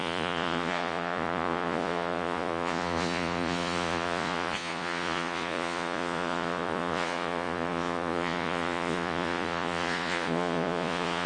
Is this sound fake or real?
fake